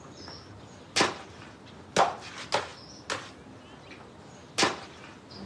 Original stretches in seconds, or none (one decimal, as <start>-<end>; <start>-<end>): 0.0-5.5